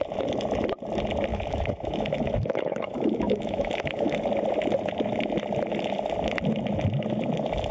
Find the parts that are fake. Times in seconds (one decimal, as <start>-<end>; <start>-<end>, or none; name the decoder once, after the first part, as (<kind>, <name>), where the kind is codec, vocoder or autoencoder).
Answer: 1.3-4.2 (autoencoder, DAC-VAE)